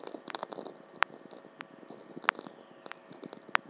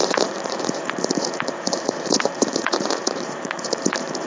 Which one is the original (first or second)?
first